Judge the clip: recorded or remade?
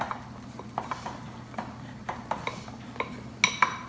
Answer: recorded